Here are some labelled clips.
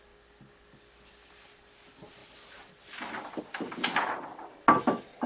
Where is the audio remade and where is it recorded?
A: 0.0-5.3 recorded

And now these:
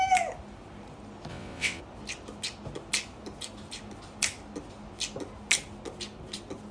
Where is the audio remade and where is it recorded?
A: 0.0-1.3 recorded; 1.3-1.8 remade; 1.8-6.7 recorded

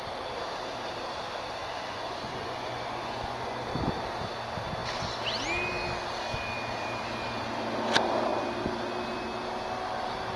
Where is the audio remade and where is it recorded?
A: 0.0-1.6 recorded; 1.6-3.6 remade; 3.6-10.4 recorded

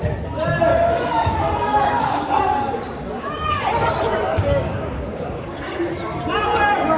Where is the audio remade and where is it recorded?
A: 0.0-0.7 recorded; 0.7-3.6 remade; 3.6-4.3 recorded; 4.3-5.9 remade; 5.9-7.0 recorded